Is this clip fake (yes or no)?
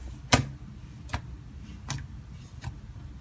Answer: no